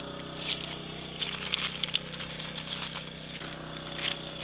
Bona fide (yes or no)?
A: yes